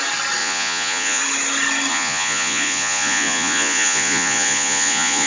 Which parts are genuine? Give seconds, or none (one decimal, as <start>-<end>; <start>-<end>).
0.0-0.4; 1.2-1.9